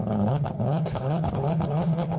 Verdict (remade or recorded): remade